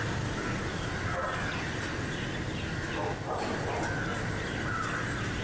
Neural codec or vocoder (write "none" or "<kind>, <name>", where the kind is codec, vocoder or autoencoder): none